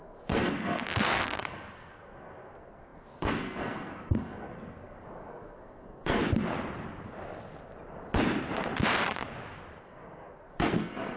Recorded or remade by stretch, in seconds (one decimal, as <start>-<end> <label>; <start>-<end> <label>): 0.0-6.2 remade; 6.2-9.8 recorded; 9.8-11.2 remade